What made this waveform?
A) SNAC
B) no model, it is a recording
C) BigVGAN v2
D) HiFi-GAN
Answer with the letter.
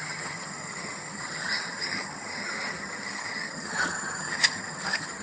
D